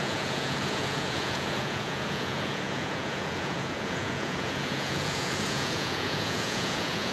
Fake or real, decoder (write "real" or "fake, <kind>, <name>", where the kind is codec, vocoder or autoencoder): fake, vocoder, Vocos